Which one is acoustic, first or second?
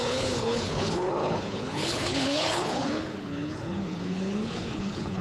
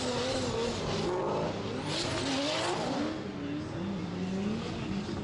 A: second